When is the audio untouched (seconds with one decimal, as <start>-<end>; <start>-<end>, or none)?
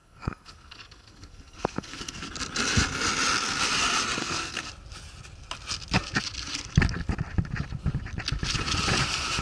2.3-4.2; 4.7-9.4